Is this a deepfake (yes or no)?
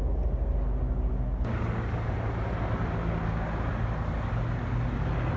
no